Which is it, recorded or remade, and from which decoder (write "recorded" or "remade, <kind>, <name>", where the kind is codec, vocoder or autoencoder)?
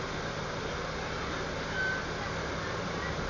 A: recorded